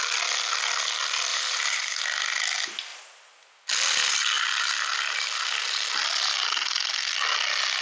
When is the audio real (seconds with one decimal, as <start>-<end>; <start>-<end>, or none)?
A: 0.0-1.3; 2.0-7.8